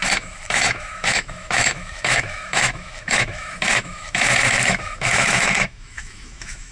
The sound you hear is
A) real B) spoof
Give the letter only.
B